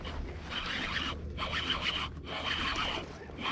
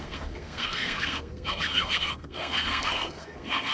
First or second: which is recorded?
first